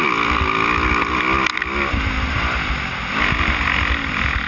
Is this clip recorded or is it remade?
recorded